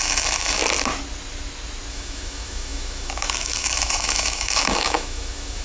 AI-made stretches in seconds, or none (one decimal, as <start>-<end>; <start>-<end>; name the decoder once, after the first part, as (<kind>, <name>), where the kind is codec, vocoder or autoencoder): 0.0-0.6 (autoencoder, DAC-VAE); 1.9-5.6